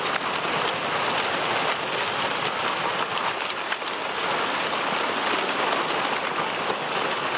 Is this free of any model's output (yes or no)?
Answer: yes